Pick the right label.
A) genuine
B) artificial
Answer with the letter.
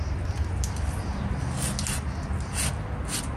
A